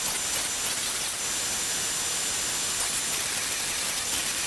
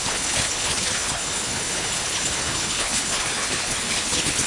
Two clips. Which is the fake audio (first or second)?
second